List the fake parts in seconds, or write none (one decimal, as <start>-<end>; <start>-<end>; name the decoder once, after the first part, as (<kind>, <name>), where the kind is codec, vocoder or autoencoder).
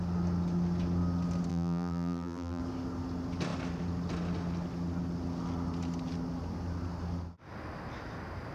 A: 1.5-2.6 (vocoder, BigVGAN v2)